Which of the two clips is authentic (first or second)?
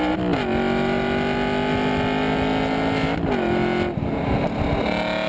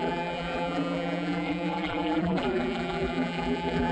first